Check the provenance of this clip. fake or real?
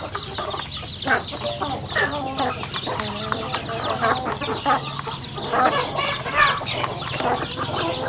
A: real